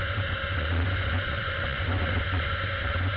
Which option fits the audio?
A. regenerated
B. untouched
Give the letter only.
A